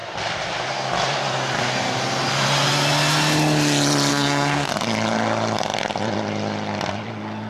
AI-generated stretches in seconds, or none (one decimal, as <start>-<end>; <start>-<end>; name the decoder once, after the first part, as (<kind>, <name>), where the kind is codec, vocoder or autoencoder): 4.1-4.7 (codec, SNAC)